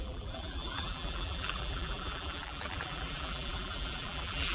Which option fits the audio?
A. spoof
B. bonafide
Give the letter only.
A